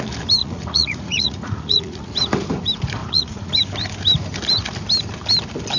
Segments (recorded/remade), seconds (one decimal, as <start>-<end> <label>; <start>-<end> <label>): 0.0-0.4 recorded; 0.4-2.1 remade; 2.1-3.0 recorded; 3.0-3.5 remade; 3.5-5.8 recorded